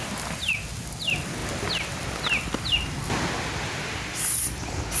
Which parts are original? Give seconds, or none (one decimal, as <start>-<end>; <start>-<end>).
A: 0.0-5.0